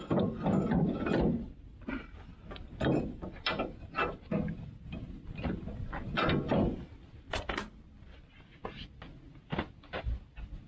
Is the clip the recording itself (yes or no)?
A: yes